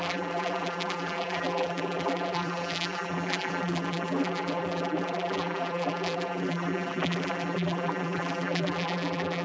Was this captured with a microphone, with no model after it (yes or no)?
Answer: no